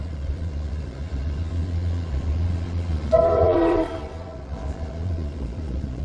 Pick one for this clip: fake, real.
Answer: fake